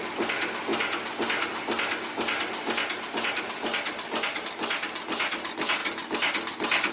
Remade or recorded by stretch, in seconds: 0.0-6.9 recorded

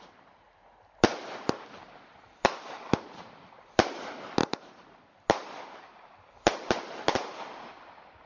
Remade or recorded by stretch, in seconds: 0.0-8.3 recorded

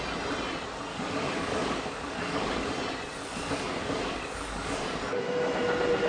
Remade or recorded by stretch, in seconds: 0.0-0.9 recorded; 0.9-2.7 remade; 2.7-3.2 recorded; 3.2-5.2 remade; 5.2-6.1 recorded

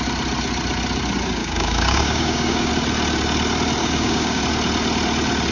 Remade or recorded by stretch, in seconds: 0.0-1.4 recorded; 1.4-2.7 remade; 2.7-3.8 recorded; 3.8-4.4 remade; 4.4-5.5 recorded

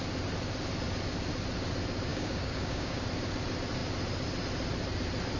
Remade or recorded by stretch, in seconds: 0.0-2.1 recorded; 2.1-3.0 remade; 3.0-5.4 recorded

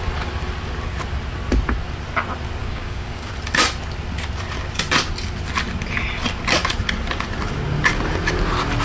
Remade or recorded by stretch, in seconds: 0.0-2.6 recorded; 2.6-3.3 remade; 3.3-8.8 recorded

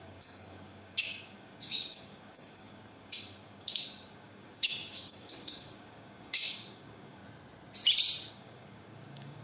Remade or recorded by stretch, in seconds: 0.0-7.2 remade; 7.2-8.3 recorded; 8.3-9.4 remade

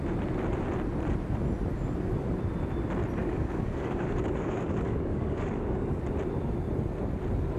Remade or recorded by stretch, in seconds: 0.0-3.2 recorded; 3.2-6.0 remade; 6.0-7.6 recorded